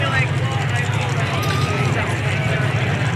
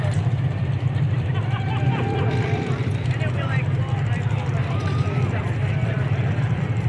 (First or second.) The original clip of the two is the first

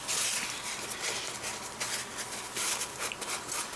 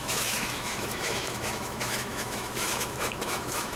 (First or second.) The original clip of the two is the first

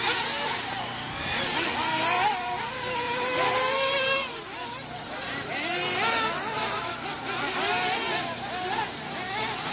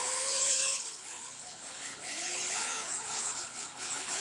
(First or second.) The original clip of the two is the first